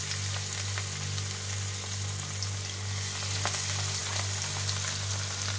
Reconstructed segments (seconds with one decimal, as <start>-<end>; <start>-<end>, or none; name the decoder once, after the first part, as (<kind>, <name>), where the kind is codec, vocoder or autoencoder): none